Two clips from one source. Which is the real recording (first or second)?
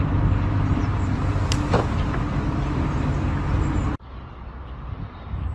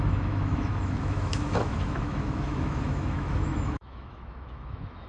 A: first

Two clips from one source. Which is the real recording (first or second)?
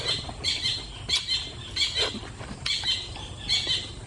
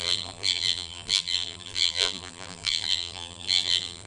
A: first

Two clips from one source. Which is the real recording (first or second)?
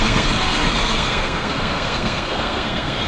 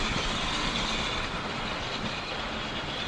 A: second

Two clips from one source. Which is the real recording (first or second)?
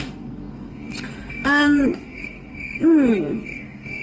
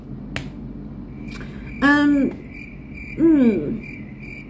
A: second